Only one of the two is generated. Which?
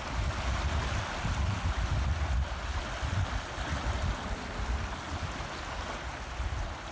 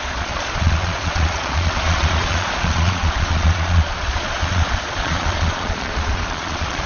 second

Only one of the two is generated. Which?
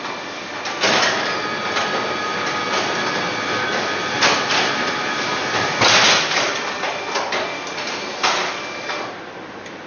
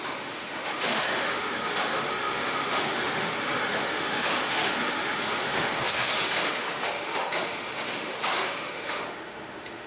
second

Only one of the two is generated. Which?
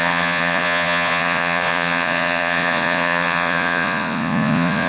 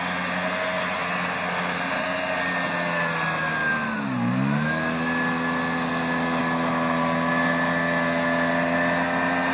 first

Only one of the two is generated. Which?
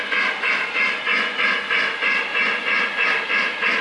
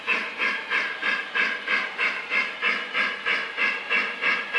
second